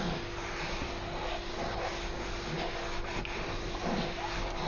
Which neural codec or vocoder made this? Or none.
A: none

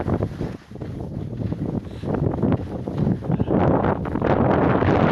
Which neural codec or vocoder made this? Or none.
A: none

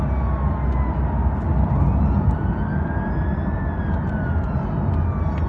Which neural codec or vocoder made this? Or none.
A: none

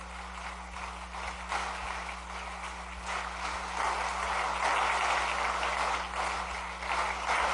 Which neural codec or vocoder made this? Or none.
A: none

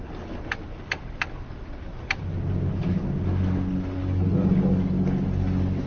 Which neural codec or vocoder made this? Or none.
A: none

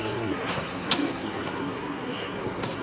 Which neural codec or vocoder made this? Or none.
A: codec, SNAC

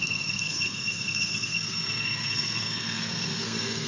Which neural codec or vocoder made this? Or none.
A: codec, SNAC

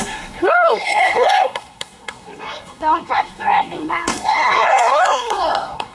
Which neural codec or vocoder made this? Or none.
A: codec, SNAC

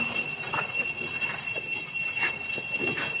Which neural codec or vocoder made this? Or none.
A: none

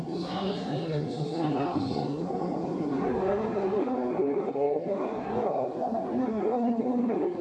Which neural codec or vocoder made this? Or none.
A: codec, SNAC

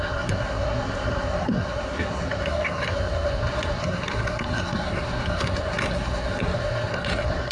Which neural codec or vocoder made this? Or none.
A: codec, SNAC